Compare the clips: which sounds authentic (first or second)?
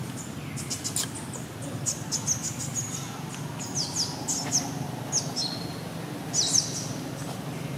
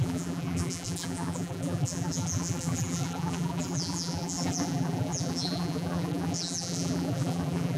first